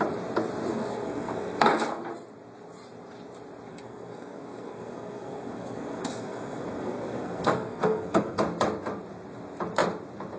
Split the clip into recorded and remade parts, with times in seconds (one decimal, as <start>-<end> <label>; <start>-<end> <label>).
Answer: 0.0-0.7 recorded; 0.7-2.0 remade; 2.0-3.7 recorded; 3.7-8.4 remade; 8.4-10.4 recorded